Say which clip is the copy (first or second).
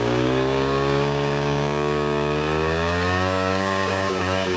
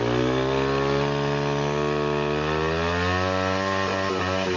first